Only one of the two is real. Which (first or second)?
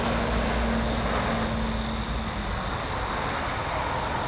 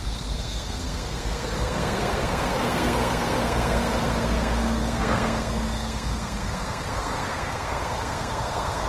first